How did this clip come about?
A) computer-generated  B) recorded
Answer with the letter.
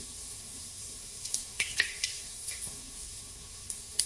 A